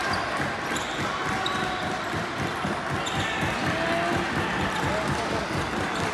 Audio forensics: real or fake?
real